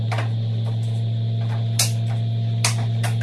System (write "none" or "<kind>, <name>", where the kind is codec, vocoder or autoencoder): none